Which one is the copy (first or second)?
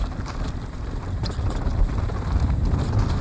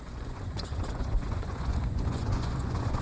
second